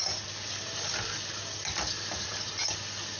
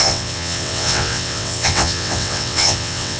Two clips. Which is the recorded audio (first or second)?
first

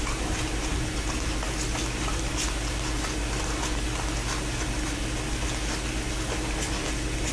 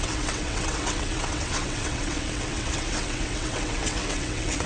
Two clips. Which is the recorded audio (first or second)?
first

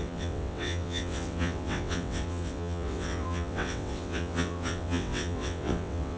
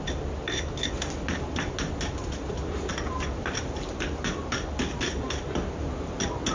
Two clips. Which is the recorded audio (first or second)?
second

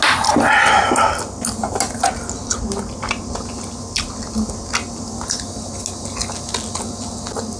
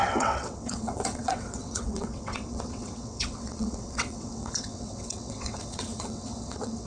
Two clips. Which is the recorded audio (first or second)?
first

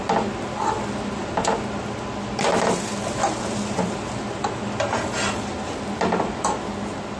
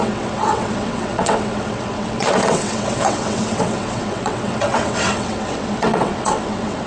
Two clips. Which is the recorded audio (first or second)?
first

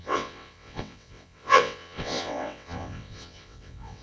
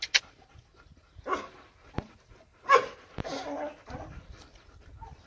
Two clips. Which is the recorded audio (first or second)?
second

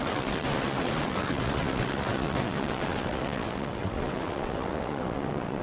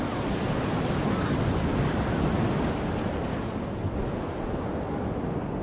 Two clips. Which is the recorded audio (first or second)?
second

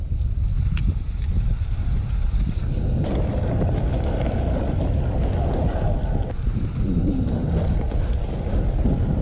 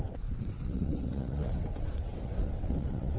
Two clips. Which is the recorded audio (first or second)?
first